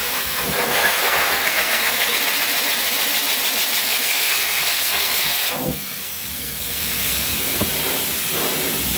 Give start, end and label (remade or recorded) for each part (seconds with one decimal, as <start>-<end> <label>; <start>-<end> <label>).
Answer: 0.0-2.2 remade; 2.2-3.8 recorded; 3.8-7.6 remade; 7.6-9.0 recorded